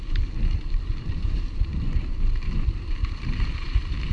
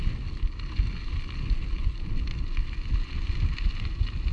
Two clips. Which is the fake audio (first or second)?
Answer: first